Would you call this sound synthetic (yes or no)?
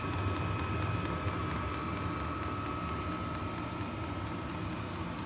no